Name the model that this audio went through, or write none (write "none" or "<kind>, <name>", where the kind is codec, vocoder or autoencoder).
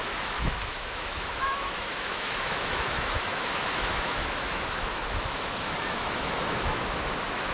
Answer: autoencoder, DAC-VAE